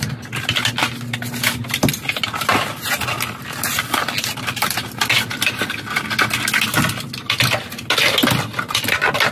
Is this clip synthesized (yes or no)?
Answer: no